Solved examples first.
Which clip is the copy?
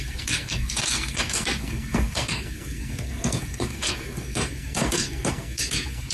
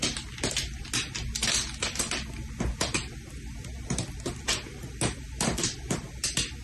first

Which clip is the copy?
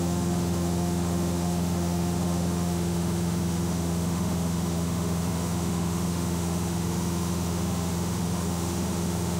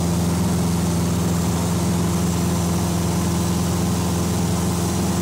first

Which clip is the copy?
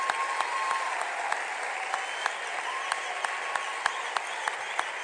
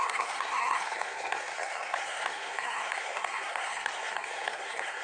second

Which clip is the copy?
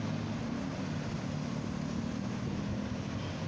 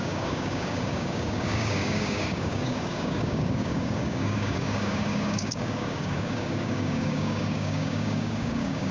second